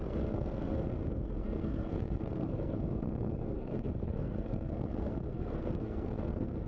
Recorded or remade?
remade